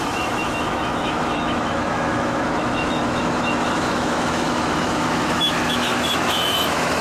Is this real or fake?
fake